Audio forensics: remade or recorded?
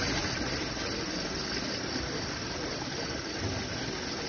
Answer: recorded